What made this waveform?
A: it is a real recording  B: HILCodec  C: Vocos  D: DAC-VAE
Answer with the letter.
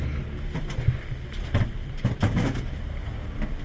A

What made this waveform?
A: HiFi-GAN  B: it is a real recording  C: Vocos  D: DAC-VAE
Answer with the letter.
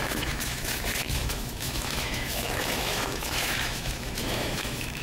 D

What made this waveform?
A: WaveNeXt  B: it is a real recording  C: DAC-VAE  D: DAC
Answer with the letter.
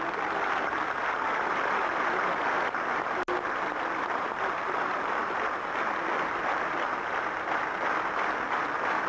B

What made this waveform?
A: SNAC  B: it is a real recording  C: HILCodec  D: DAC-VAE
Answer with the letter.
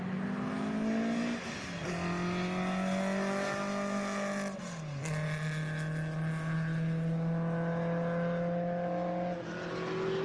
B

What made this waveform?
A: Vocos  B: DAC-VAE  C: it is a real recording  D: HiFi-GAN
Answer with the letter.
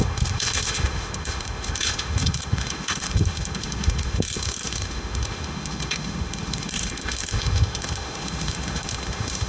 B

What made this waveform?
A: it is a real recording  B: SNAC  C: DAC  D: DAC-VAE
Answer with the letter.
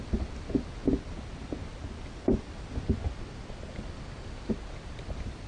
A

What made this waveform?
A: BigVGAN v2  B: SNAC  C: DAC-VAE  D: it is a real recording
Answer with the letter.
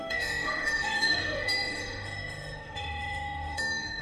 C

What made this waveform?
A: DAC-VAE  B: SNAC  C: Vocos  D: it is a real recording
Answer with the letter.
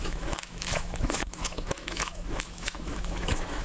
A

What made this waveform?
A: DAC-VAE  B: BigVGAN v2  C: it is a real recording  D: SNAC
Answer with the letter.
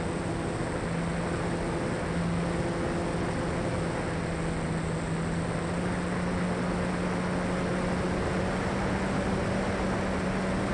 C